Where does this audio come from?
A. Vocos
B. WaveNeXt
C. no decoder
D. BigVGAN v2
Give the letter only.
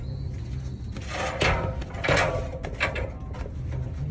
C